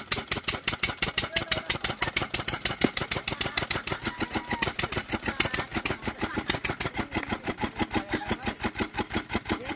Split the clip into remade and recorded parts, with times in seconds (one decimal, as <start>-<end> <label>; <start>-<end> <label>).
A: 0.0-9.8 recorded